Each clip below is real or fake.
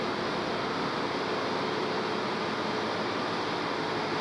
real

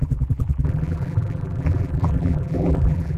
fake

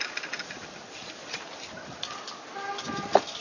real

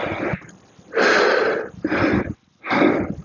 real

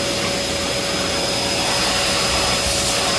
real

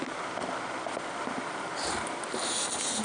real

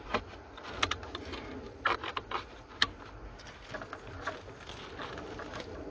real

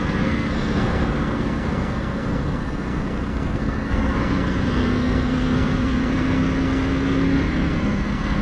fake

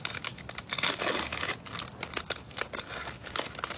real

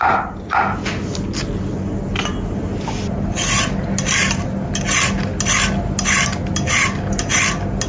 real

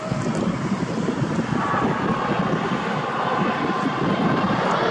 real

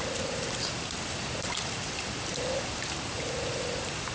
real